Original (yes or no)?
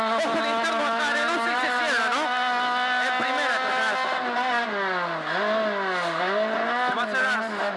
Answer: yes